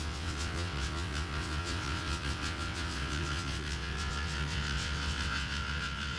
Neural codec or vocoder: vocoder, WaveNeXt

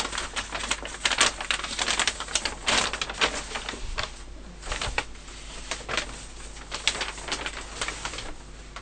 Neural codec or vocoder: none